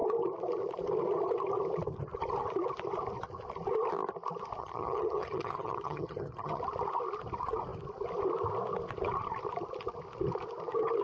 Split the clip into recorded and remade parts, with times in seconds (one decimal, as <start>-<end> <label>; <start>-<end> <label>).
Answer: 0.0-4.6 recorded; 4.6-6.6 remade; 6.6-11.0 recorded